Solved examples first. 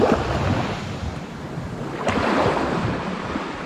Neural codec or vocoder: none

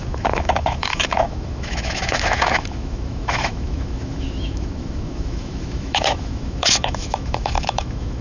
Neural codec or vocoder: autoencoder, DAC-VAE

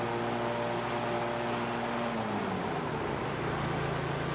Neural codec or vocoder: none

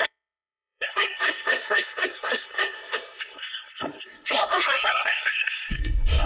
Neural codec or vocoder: codec, SNAC